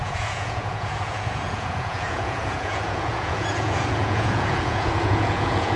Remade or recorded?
remade